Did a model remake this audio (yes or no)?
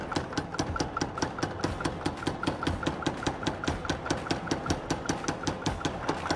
no